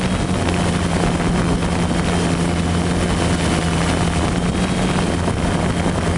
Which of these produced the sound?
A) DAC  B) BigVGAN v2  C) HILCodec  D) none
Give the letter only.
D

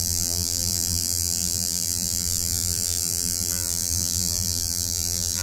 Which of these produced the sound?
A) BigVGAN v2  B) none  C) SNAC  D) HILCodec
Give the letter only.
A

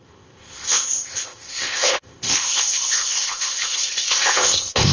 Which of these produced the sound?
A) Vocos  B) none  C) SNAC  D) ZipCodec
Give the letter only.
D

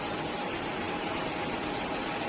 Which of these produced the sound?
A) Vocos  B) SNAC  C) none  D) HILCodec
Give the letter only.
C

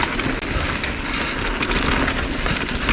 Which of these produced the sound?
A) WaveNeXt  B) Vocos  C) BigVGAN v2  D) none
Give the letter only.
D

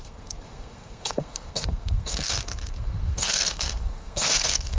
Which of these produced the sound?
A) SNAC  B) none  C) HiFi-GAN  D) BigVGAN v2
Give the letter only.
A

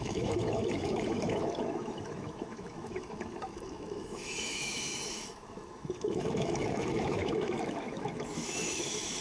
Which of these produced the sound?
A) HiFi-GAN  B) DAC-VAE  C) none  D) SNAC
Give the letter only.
B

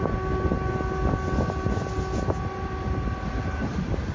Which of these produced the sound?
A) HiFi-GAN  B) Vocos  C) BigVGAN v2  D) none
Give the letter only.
D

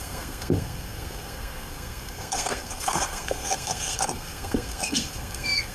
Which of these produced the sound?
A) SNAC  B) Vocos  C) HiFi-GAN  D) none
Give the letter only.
A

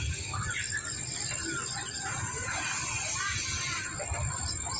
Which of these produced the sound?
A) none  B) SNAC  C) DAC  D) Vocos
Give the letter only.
A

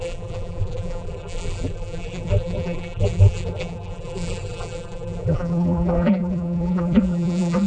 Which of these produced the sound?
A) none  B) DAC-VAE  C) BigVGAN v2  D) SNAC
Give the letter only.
C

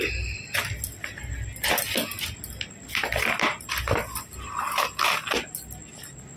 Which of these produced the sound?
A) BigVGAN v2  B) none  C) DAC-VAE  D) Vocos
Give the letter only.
B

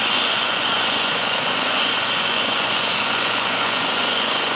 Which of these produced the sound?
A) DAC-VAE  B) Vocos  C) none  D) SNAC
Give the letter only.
B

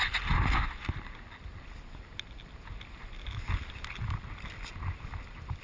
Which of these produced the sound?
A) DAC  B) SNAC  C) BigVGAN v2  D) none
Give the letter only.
D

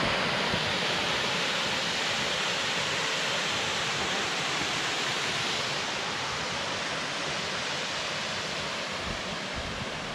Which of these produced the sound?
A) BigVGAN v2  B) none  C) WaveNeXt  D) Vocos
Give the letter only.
B